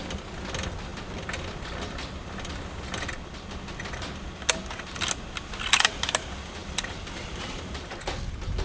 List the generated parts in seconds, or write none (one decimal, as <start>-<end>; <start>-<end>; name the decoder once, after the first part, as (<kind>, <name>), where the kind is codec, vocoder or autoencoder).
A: 6.6-8.0 (vocoder, BigVGAN v2)